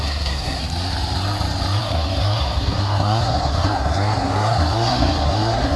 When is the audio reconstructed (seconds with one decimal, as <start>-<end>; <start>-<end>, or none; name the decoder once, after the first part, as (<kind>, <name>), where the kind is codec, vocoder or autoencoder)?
0.0-0.6 (codec, SNAC); 1.8-5.8